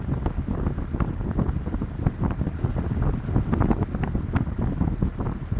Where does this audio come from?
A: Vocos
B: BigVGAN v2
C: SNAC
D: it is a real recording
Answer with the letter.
D